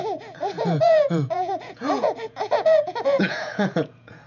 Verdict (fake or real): fake